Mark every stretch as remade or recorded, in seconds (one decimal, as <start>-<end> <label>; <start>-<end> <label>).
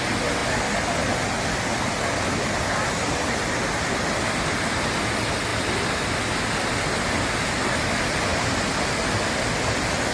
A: 0.0-10.1 recorded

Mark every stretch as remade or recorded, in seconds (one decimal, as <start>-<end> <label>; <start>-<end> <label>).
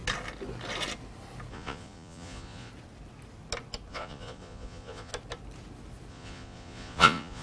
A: 0.0-1.5 recorded; 1.5-2.7 remade; 2.7-3.9 recorded; 3.9-5.1 remade; 5.1-6.1 recorded; 6.1-7.4 remade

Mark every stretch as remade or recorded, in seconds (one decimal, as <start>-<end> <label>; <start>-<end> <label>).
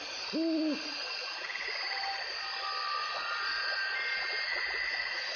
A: 0.0-1.0 recorded; 1.0-1.7 remade; 1.7-3.0 recorded; 3.0-5.4 remade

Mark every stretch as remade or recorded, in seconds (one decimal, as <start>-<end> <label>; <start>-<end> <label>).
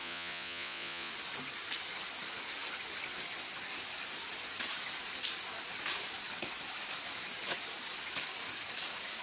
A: 0.0-1.1 remade; 1.1-9.2 recorded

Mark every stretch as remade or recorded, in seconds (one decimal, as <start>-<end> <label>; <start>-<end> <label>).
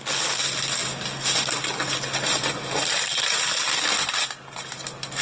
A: 0.0-5.2 recorded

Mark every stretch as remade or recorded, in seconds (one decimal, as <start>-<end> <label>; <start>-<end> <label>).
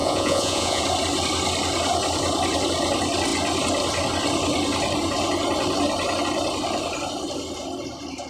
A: 0.0-0.8 remade; 0.8-8.3 recorded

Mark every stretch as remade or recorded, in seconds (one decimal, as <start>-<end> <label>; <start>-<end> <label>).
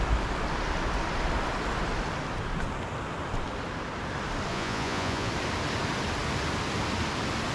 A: 0.0-4.5 recorded; 4.5-5.3 remade; 5.3-7.5 recorded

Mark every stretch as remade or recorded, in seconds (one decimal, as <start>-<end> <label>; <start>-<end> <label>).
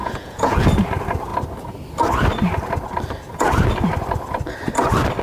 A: 0.0-0.6 remade; 0.6-5.2 recorded